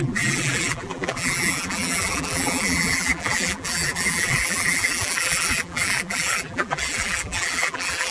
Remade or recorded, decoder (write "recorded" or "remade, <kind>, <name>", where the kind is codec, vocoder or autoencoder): remade, vocoder, BigVGAN v2